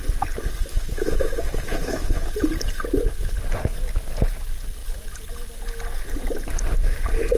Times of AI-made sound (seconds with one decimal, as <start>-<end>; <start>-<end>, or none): 0.7-2.3